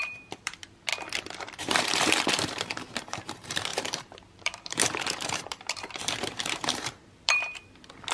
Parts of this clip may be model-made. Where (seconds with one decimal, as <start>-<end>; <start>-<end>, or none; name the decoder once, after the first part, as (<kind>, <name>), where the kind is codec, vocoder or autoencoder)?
0.0-0.9 (vocoder, BigVGAN v2); 1.4-8.1